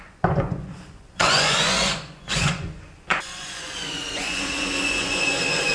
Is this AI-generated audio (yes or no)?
yes